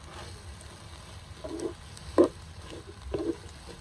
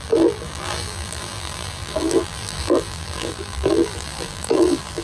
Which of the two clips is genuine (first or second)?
first